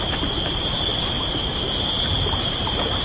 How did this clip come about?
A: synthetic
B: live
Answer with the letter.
A